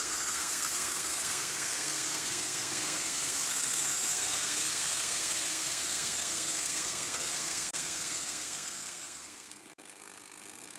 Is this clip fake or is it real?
fake